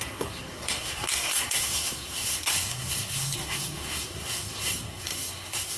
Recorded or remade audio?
remade